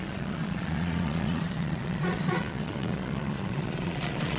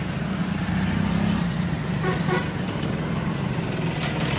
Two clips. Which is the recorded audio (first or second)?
second